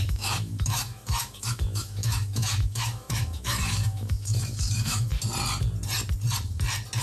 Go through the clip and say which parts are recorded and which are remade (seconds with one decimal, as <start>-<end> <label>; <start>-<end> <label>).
0.0-5.1 remade; 5.1-7.0 recorded